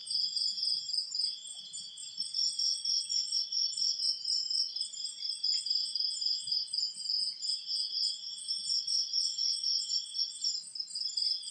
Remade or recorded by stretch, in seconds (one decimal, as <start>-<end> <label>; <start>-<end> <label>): 0.0-2.0 remade; 2.0-5.8 recorded; 5.8-8.8 remade; 8.8-11.5 recorded